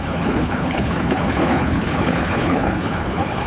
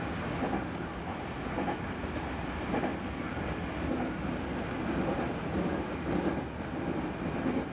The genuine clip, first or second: second